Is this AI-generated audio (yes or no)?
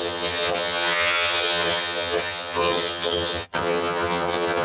yes